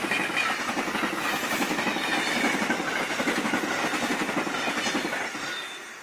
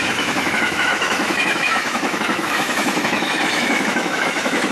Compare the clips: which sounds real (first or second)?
first